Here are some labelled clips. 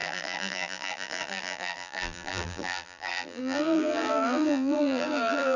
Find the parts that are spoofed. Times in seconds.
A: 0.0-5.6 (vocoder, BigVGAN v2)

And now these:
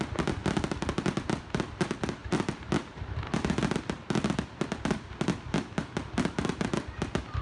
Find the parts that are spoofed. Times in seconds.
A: 0.0-3.6 (vocoder, BigVGAN v2); 5.4-7.4

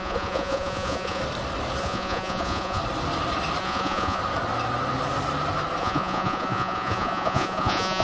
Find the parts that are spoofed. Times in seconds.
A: 0.0-1.2 (vocoder, Vocos); 1.8-2.8; 3.6-4.2; 5.8-8.0

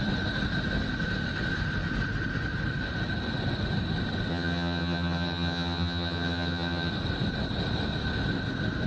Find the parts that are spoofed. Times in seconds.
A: 4.3-6.9 (vocoder, HiFi-GAN)

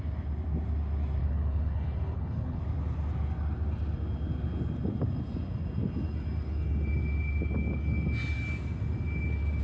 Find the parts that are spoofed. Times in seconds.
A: 1.2-2.6 (codec, HILCodec)